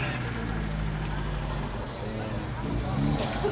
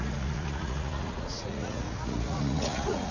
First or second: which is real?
first